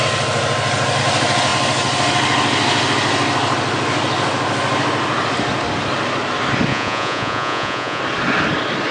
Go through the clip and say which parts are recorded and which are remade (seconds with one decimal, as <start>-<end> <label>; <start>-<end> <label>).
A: 0.0-6.7 recorded; 6.7-8.0 remade; 8.0-8.9 recorded